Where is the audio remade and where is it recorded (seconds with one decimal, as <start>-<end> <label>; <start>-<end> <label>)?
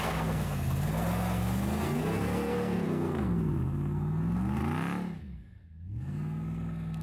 0.0-4.6 remade; 4.6-5.2 recorded; 5.2-7.0 remade